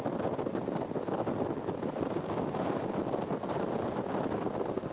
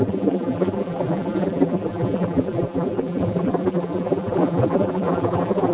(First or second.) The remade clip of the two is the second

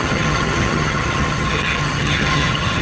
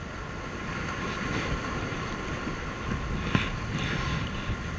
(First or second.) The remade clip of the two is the first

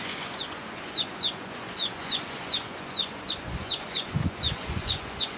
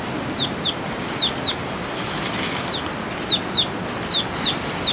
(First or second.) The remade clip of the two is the first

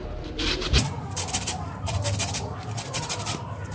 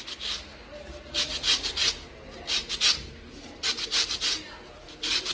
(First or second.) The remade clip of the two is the first